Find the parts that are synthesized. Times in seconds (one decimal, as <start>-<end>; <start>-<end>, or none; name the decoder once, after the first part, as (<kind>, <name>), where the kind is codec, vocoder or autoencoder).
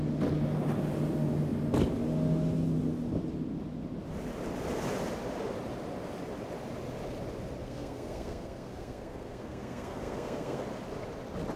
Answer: 7.6-10.6 (codec, SNAC)